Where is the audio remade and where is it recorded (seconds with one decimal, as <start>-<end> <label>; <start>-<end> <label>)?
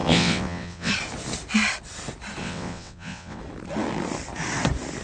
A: 0.0-0.9 remade; 0.9-2.4 recorded; 2.4-3.4 remade; 3.4-5.0 recorded